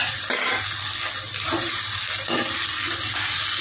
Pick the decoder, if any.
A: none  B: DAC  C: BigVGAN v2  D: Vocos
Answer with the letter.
A